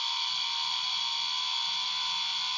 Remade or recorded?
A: recorded